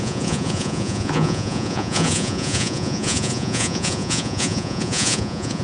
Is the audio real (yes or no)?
no